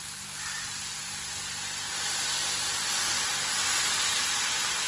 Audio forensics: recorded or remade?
recorded